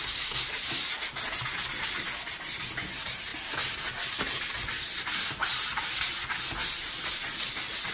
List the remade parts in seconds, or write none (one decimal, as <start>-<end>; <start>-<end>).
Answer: none